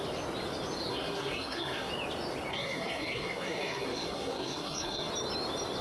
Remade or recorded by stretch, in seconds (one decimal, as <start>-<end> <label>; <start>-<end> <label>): 0.0-0.9 recorded; 0.9-1.9 remade; 1.9-2.5 recorded; 2.5-5.1 remade; 5.1-5.8 recorded